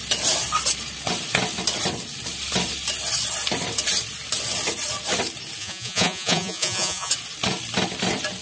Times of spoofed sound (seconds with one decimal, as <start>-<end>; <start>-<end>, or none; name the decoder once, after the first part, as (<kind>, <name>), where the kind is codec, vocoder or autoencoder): 5.6-7.1 (vocoder, Vocos)